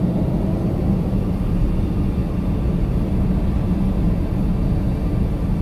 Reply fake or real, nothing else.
real